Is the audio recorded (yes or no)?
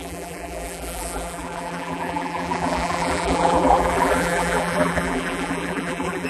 no